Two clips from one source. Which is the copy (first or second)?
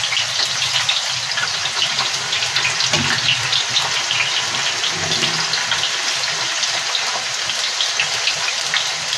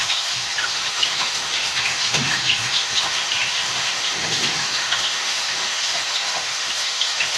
second